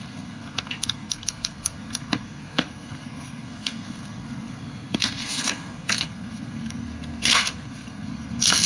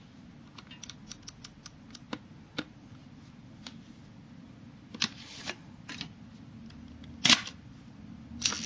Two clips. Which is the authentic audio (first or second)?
second